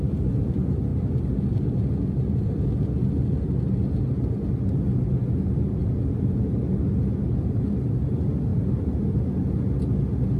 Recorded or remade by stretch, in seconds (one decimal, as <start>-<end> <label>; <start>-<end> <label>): 0.0-8.5 recorded; 8.5-9.6 remade; 9.6-10.4 recorded